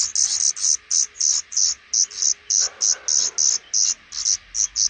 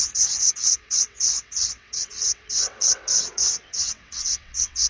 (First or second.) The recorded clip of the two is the first